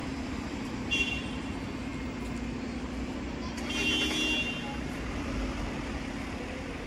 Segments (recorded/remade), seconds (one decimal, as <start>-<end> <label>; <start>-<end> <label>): 0.0-1.5 remade; 1.5-6.9 recorded